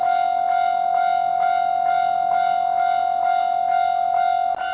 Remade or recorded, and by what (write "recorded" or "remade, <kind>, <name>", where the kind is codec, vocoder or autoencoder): recorded